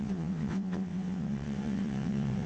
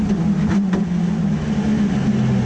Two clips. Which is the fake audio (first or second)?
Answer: first